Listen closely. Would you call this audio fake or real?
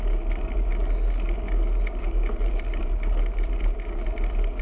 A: real